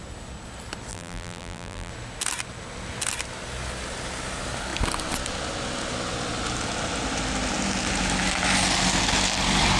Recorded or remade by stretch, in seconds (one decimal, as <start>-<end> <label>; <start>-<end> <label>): 0.0-0.9 recorded; 0.9-1.9 remade; 1.9-9.8 recorded